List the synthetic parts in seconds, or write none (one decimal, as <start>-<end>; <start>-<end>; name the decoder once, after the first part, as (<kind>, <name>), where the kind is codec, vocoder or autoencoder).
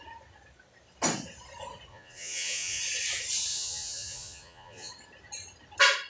1.9-2.8 (vocoder, Vocos); 3.5-4.9